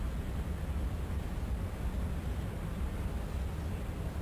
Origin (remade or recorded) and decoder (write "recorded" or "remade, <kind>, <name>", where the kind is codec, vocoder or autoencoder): recorded